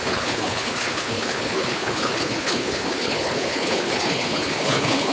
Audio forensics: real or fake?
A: fake